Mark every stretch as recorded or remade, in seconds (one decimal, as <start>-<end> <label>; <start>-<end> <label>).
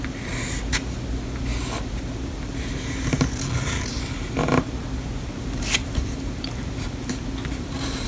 0.0-8.1 recorded